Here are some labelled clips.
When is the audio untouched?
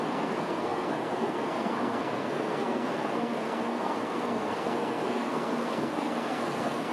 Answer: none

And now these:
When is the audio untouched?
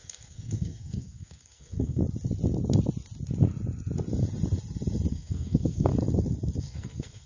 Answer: 2.0-5.1; 5.9-6.6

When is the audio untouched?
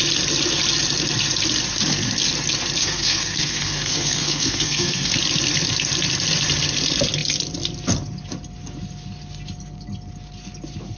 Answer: 0.0-2.8; 5.1-11.0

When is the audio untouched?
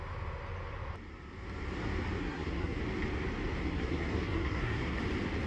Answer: 0.0-2.2; 2.8-3.6; 5.0-5.5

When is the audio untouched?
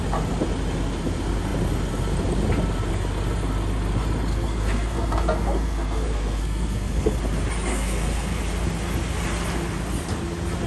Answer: 0.0-4.3; 7.2-7.7; 8.4-10.7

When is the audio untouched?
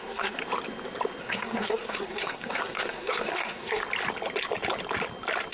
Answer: 0.4-1.2; 3.8-5.5